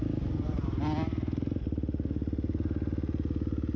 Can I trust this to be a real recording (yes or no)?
yes